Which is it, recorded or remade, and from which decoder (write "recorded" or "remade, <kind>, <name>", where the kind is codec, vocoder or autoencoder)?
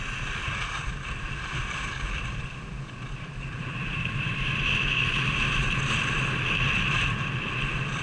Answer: recorded